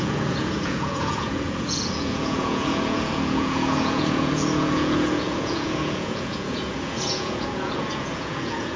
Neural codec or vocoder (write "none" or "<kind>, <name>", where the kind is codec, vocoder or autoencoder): vocoder, Vocos